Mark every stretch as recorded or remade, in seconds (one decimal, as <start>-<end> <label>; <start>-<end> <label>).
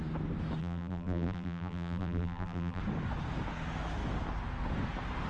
0.0-0.6 recorded; 0.6-2.8 remade; 2.8-5.3 recorded